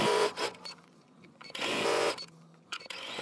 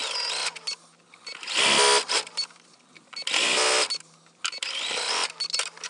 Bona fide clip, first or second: second